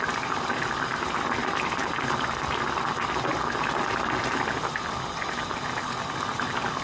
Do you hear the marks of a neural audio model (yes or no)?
no